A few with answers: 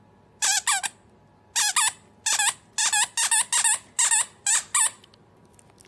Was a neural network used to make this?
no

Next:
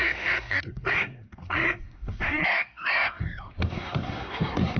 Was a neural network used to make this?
yes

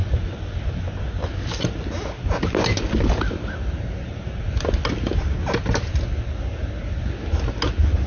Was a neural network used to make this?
no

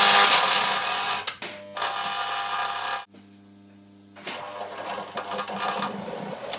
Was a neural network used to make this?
no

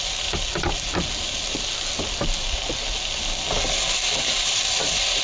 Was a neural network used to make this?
no